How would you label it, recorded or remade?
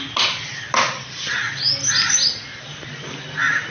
recorded